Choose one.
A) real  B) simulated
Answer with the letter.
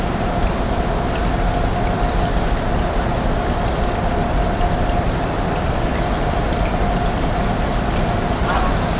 A